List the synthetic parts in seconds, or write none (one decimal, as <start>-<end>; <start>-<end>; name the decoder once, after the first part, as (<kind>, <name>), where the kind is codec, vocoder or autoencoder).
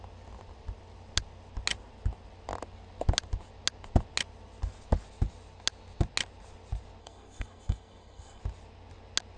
7.0-8.4 (codec, SNAC)